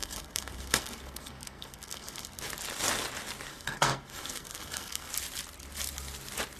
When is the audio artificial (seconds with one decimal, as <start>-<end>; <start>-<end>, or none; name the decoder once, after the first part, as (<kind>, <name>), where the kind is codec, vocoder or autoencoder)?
0.0-2.4 (codec, SNAC); 3.5-5.1